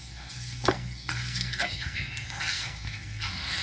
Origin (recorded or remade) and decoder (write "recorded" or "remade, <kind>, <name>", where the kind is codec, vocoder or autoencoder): remade, codec, SNAC